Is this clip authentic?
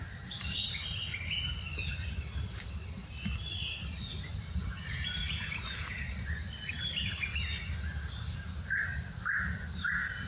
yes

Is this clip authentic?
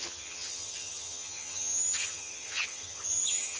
no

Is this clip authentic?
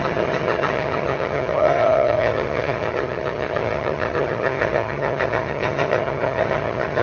no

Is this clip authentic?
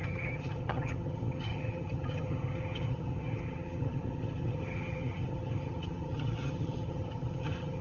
no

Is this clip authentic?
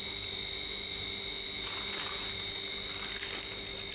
yes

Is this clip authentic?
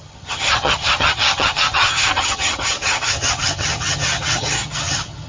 no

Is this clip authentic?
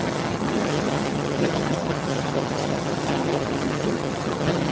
no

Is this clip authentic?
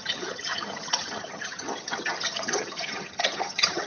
no